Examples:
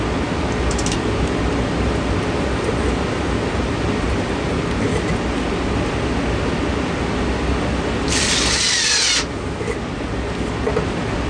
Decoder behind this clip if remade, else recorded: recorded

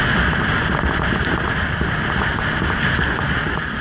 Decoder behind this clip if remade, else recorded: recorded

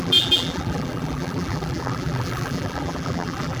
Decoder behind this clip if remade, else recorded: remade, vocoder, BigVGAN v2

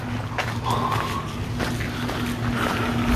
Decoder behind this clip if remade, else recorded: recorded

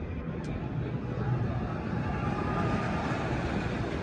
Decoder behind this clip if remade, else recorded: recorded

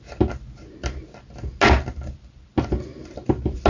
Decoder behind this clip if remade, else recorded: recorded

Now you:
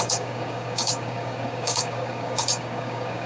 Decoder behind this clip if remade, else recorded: remade, codec, DAC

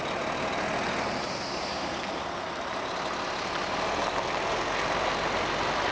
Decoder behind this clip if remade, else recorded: recorded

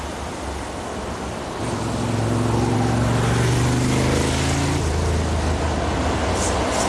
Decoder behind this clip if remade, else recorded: recorded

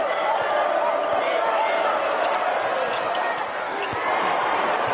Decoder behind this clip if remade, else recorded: recorded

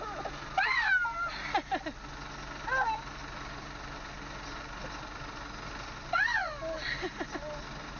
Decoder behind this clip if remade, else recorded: recorded